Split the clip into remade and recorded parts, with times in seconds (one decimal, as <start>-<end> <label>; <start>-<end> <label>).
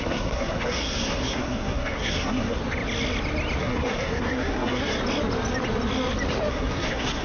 0.0-2.6 remade; 2.6-3.6 recorded; 3.6-4.8 remade; 4.8-6.5 recorded; 6.5-7.2 remade